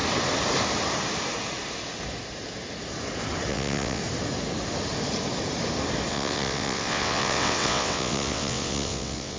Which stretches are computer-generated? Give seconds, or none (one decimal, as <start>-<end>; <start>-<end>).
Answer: 3.5-4.0; 6.1-9.4